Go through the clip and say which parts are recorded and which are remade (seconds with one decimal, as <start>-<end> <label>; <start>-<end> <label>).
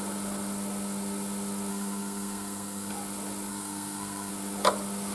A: 0.0-1.7 recorded; 1.7-2.9 remade; 2.9-3.5 recorded; 3.5-4.3 remade; 4.3-5.1 recorded